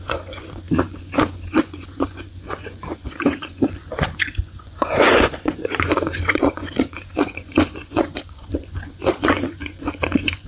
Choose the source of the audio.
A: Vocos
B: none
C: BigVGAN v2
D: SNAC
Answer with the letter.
A